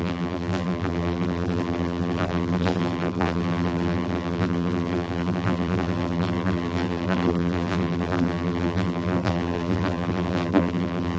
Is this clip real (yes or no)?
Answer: no